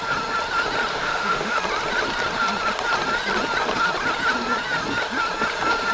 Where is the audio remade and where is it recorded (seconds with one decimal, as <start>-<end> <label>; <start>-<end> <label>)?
0.0-0.9 recorded; 0.9-1.6 remade; 1.6-5.9 recorded